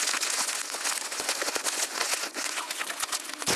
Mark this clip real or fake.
fake